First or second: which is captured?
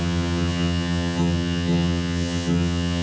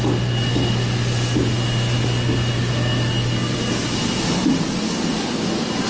second